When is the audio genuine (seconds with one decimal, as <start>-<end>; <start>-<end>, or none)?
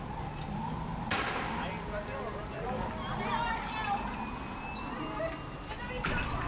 0.0-6.5